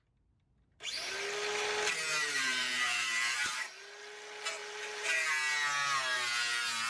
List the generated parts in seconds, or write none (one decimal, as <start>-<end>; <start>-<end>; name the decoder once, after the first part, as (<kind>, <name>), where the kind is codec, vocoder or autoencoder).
2.1-3.4 (vocoder, BigVGAN v2); 4.6-5.3